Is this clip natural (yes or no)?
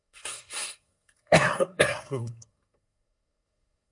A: no